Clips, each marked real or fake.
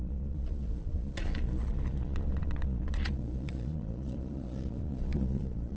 fake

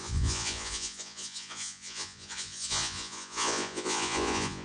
fake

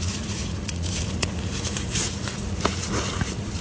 fake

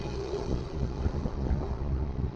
fake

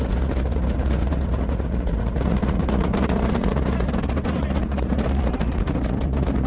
fake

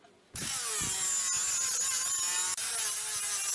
real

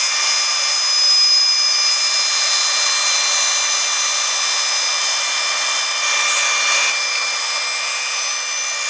real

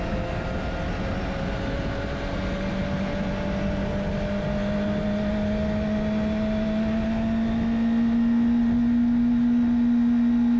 real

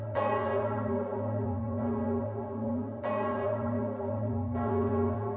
fake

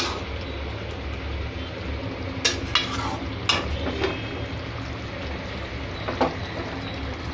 real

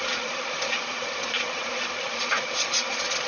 fake